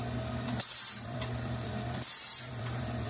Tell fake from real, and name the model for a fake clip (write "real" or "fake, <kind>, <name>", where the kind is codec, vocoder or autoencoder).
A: fake, vocoder, BigVGAN v2